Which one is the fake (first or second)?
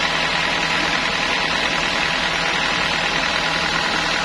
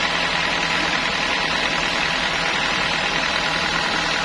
second